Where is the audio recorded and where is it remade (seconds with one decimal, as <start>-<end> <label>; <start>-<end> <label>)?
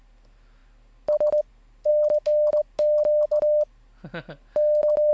0.0-5.1 recorded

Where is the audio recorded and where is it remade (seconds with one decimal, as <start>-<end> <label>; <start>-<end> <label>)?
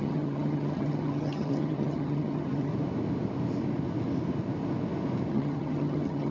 0.0-2.7 remade; 2.7-5.3 recorded; 5.3-6.3 remade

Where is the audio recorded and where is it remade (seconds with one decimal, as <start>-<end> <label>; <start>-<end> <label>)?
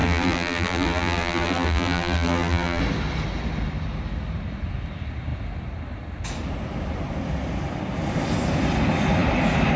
0.0-2.8 remade; 2.8-9.8 recorded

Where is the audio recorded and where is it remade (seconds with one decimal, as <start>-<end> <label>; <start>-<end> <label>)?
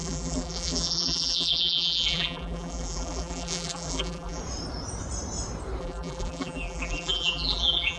0.0-4.4 remade; 4.4-5.8 recorded; 5.8-8.0 remade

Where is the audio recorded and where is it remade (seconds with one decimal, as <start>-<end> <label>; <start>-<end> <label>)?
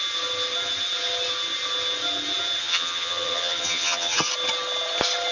0.0-2.6 recorded; 2.6-4.3 remade; 4.3-5.3 recorded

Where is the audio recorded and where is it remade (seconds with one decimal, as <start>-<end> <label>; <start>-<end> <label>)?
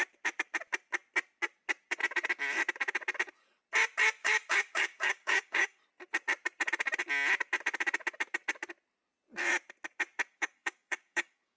0.0-4.2 recorded; 4.2-5.8 remade; 5.8-10.3 recorded; 10.3-11.6 remade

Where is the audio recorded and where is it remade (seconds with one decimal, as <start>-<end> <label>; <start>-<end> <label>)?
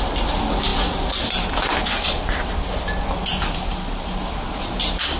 0.0-5.2 recorded